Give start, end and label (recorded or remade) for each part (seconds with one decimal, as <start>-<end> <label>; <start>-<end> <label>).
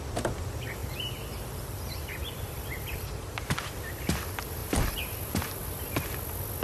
0.0-0.8 recorded; 0.8-3.9 remade; 3.9-6.6 recorded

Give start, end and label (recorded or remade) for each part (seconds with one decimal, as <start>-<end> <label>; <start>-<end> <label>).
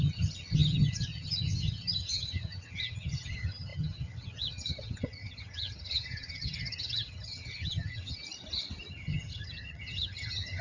0.0-8.2 remade; 8.2-8.9 recorded; 8.9-10.6 remade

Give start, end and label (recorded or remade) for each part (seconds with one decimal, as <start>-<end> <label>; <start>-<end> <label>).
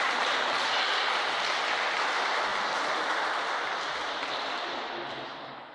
0.0-5.7 recorded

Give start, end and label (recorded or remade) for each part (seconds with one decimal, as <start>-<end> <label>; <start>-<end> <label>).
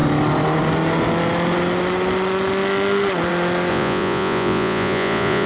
0.0-3.7 recorded; 3.7-5.5 remade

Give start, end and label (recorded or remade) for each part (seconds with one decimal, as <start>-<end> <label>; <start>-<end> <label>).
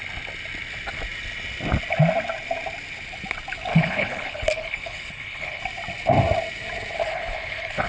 0.0-3.7 recorded; 3.7-5.6 remade; 5.6-7.0 recorded; 7.0-7.9 remade